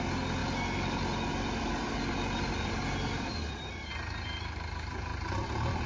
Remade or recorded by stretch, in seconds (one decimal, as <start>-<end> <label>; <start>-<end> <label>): 0.0-0.4 recorded; 0.4-3.9 remade; 3.9-5.1 recorded; 5.1-5.9 remade